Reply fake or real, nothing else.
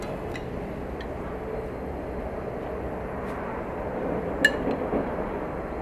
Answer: real